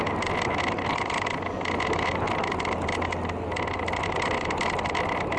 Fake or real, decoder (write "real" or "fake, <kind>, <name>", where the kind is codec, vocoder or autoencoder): real